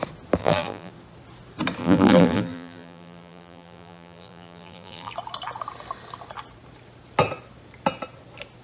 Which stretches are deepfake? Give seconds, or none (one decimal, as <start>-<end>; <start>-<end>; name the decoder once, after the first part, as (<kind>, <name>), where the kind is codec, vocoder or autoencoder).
0.4-0.9 (vocoder, BigVGAN v2); 1.8-5.1